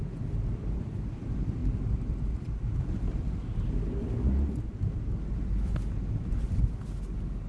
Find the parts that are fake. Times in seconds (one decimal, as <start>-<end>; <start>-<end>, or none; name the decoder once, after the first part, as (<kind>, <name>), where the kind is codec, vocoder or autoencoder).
none